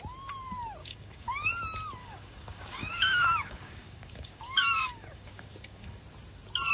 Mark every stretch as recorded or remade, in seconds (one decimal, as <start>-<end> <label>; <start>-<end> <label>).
0.0-0.8 recorded; 0.8-1.5 remade; 1.5-2.0 recorded; 2.0-6.0 remade; 6.0-6.7 recorded